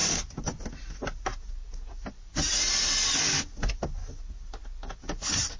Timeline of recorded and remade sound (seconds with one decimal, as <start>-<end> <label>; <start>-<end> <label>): 0.0-5.6 recorded